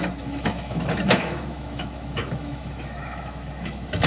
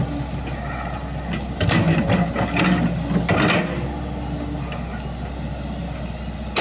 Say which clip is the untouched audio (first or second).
second